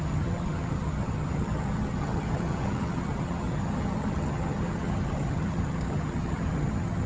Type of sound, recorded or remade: remade